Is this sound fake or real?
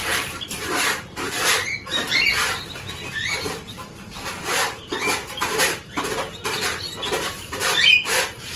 fake